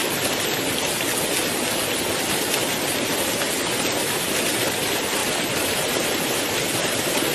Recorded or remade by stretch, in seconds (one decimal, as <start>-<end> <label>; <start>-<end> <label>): 0.0-7.3 recorded